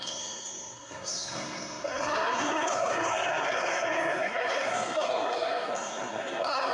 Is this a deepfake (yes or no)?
yes